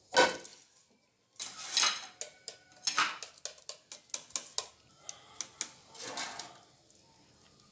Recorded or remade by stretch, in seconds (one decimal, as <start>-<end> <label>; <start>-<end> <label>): 0.0-7.7 recorded